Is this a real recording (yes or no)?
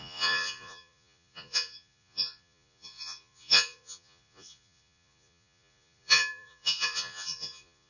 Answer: no